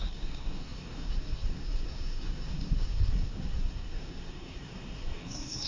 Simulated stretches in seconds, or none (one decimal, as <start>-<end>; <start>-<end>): 0.0-5.7